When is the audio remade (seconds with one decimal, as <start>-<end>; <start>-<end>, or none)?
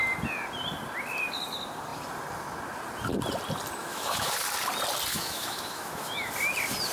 3.8-4.3; 5.1-6.3